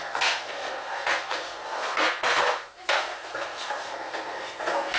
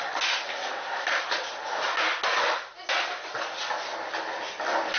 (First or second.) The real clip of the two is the second